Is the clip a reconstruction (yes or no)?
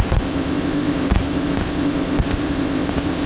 yes